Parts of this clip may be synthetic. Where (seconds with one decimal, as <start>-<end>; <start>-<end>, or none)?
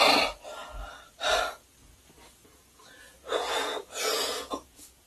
1.7-5.1